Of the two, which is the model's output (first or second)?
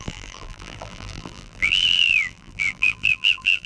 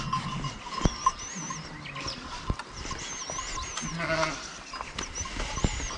first